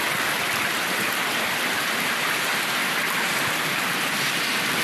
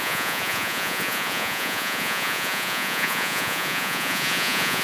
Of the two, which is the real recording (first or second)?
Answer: first